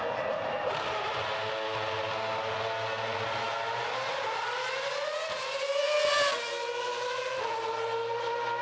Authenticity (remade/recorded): recorded